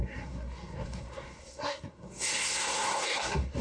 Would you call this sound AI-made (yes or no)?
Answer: yes